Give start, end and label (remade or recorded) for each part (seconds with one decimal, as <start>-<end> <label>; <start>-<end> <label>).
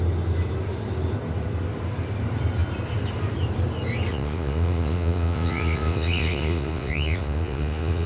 0.0-4.1 recorded; 4.1-8.1 remade